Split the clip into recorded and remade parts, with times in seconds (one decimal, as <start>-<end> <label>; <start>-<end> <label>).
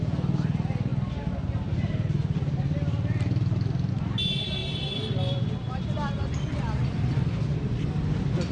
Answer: 0.0-8.5 recorded